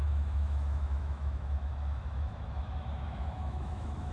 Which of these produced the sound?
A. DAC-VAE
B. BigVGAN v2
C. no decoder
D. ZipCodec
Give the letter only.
A